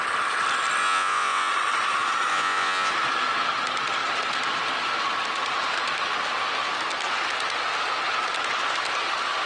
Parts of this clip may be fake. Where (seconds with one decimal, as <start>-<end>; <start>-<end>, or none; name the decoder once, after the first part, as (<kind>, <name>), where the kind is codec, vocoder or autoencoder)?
0.8-1.5 (vocoder, Vocos); 2.3-2.9